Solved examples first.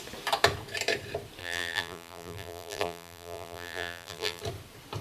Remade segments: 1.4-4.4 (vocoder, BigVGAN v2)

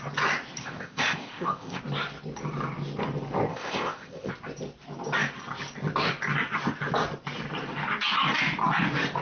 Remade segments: 0.6-1.8 (codec, ZipCodec); 3.5-4.3

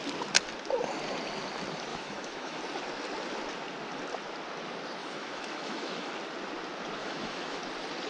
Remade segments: 1.9-2.6 (autoencoder, DAC-VAE); 5.0-6.1; 7.0-7.6

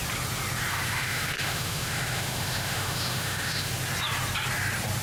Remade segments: 0.7-3.7 (autoencoder, DAC-VAE)